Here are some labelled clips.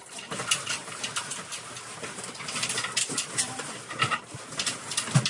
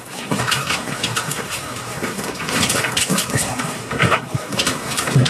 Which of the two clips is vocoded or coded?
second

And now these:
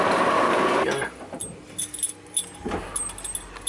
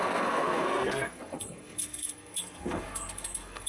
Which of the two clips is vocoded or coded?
second